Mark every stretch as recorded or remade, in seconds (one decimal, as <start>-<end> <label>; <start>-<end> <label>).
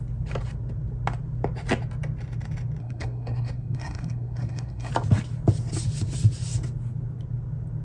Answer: 0.0-2.8 recorded; 2.8-4.9 remade; 4.9-7.8 recorded